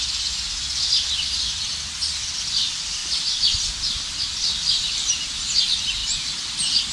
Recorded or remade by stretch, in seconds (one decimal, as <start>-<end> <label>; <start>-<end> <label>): 0.0-6.9 recorded